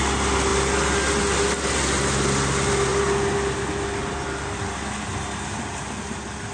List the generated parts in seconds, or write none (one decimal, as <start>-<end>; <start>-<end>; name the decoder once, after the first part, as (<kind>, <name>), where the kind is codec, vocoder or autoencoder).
none